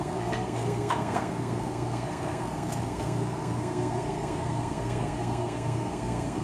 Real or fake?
fake